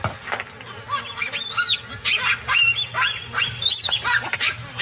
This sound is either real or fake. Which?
real